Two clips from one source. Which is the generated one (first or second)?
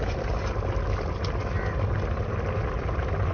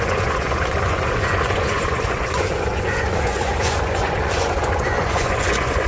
second